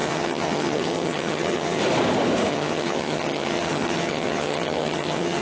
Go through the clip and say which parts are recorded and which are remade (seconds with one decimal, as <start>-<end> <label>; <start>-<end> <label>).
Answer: 0.0-1.8 remade; 1.8-2.5 recorded; 2.5-5.4 remade